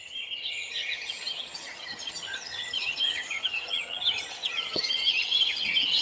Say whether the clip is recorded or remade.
remade